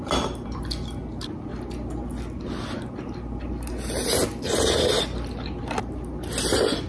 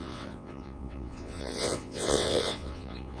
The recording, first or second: first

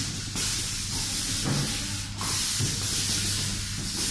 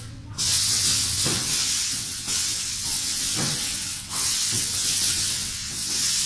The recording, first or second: first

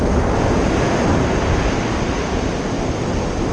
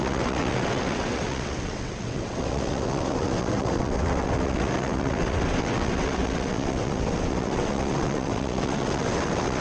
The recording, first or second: first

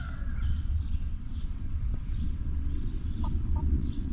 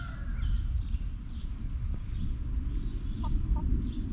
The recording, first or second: second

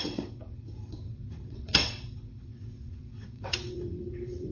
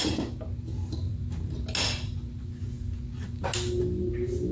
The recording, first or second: second